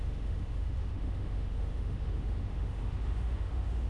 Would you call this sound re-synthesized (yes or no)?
yes